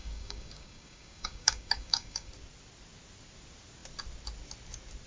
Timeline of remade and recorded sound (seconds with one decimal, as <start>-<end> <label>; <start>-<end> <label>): 0.0-2.3 remade; 2.3-5.1 recorded